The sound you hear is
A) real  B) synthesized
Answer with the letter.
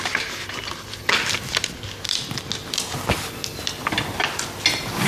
A